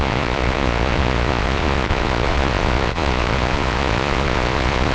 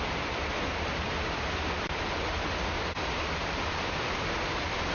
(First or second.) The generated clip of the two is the first